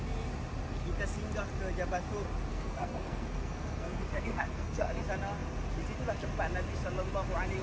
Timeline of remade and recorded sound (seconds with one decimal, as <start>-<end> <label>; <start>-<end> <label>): 0.0-2.5 recorded; 2.5-4.9 remade; 4.9-7.6 recorded